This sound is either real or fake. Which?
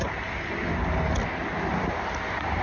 real